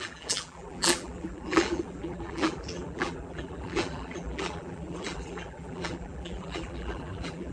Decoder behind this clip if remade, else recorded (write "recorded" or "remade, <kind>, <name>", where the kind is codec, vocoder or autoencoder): remade, vocoder, BigVGAN v2